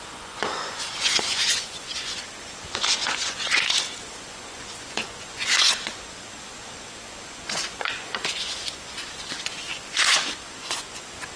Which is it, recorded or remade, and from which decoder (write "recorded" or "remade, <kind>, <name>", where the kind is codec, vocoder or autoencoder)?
remade, vocoder, Vocos